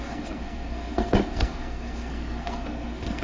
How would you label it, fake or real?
fake